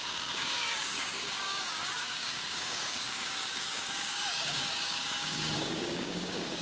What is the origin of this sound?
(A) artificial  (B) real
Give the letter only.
A